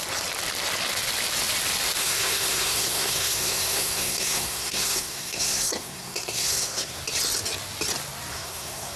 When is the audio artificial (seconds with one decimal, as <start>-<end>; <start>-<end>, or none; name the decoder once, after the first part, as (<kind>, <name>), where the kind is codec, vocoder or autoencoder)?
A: 2.0-7.0 (codec, SNAC); 8.3-9.0